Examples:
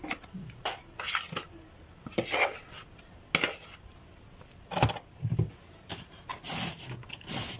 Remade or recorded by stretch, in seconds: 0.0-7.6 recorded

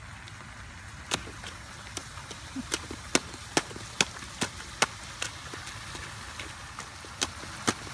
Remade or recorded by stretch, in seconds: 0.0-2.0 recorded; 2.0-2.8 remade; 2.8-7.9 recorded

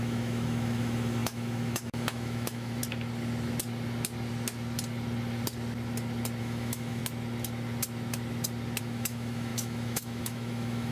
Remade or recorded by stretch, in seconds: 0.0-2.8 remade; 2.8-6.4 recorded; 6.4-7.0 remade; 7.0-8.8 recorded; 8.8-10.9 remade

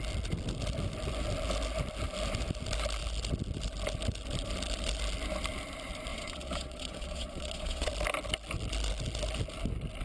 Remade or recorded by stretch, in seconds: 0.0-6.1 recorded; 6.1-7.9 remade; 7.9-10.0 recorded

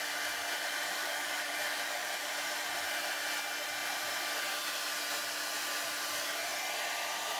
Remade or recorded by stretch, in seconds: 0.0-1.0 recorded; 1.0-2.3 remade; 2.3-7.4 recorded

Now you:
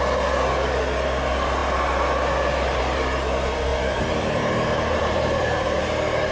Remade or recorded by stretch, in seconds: 0.0-3.7 recorded; 3.7-5.8 remade; 5.8-6.3 recorded

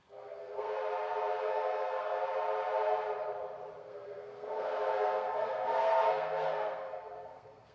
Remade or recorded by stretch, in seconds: 0.0-0.8 remade; 0.8-1.4 recorded; 1.4-2.2 remade; 2.2-3.8 recorded; 3.8-7.7 remade

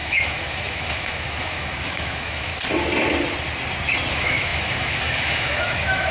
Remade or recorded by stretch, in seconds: 0.0-2.5 remade; 2.5-4.1 recorded; 4.1-6.1 remade